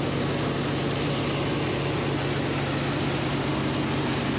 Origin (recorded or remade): recorded